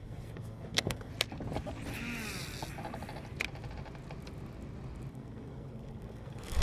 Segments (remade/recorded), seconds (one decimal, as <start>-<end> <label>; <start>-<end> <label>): 0.0-1.1 remade; 1.1-5.1 recorded; 5.1-6.6 remade